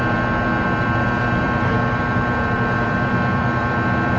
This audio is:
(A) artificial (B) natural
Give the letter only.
A